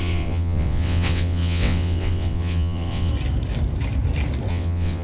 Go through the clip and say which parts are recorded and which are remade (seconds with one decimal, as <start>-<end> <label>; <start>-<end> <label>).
0.0-3.1 remade; 3.1-4.5 recorded; 4.5-5.0 remade